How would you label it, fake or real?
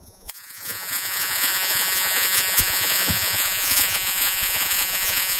fake